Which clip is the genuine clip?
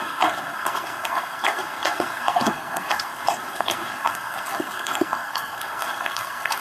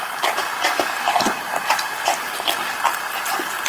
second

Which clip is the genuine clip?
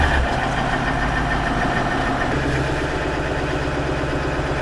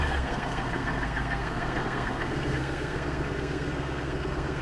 first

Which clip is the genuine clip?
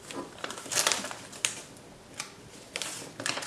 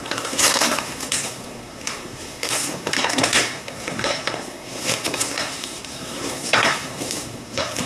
first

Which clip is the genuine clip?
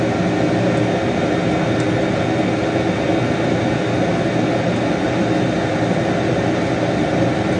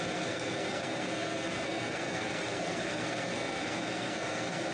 first